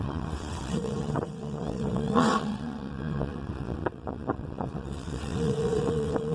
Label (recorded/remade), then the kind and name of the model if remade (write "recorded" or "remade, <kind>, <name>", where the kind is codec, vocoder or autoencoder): remade, vocoder, WaveNeXt